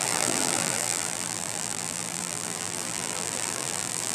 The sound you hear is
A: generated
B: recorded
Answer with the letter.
A